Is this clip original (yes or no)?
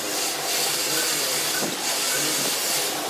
yes